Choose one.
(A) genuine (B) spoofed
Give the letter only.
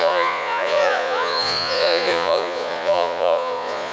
B